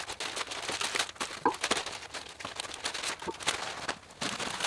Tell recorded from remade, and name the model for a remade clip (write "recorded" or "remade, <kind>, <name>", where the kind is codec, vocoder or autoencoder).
recorded